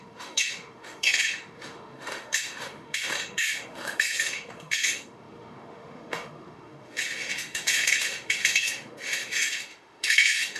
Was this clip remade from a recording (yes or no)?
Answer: yes